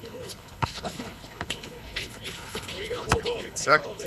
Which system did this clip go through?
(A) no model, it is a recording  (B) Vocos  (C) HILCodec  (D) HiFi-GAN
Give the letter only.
C